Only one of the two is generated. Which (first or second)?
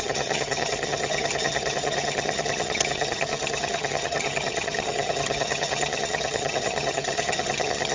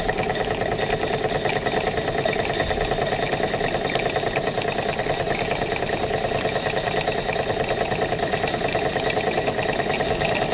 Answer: first